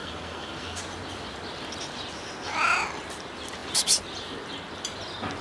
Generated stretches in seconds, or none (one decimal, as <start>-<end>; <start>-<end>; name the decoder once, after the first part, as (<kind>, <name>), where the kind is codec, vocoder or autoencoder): 0.0-0.8 (codec, SNAC)